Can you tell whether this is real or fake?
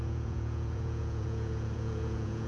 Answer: fake